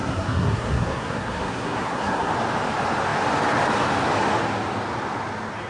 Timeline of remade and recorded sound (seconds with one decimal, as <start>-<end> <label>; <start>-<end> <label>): 0.0-2.3 remade; 2.3-5.7 recorded